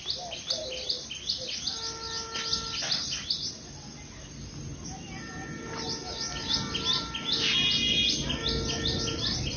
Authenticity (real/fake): real